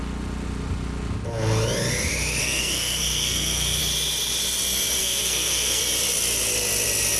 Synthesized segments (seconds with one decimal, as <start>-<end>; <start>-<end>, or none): 2.4-3.8; 5.0-5.8